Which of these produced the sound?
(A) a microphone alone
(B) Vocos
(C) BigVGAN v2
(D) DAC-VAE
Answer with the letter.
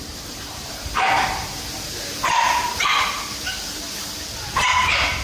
C